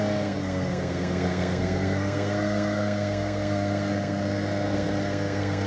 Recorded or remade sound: remade